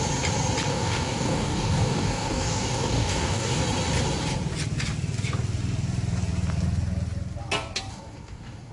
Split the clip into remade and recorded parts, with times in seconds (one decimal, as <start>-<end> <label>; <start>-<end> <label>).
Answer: 0.0-0.7 recorded; 0.7-3.6 remade; 3.6-7.9 recorded; 7.9-8.7 remade